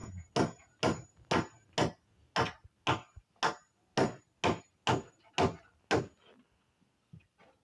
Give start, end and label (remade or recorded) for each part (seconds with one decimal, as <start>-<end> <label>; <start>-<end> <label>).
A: 0.0-7.6 recorded